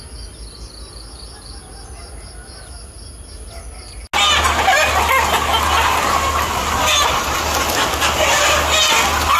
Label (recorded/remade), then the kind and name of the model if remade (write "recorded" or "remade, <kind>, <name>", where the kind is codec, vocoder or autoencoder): recorded